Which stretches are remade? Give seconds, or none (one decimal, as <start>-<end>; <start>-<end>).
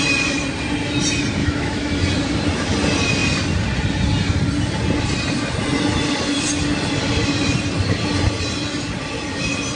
1.4-2.0